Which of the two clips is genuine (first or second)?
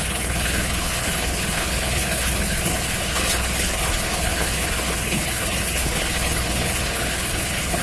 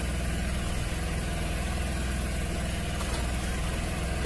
second